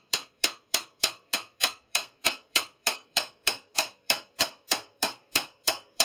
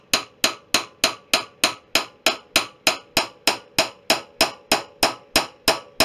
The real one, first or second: second